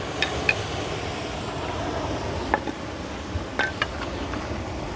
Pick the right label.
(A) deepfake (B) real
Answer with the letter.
B